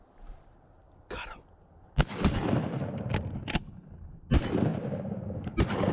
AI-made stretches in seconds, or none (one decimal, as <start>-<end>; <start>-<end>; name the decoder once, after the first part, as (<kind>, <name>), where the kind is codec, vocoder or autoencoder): none